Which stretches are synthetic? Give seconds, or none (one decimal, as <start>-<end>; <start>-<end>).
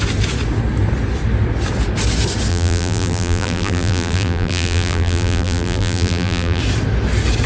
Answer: 2.5-6.6